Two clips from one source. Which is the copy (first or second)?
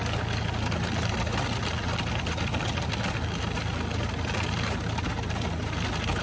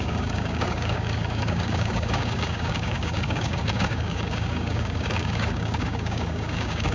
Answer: second